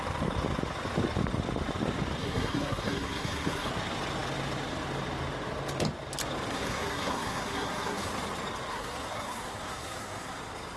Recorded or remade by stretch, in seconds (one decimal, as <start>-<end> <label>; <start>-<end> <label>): 0.0-2.2 recorded; 2.2-3.7 remade; 3.7-6.5 recorded; 6.5-8.1 remade; 8.1-8.7 recorded; 8.7-10.4 remade; 10.4-10.8 recorded